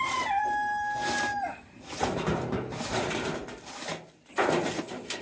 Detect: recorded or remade recorded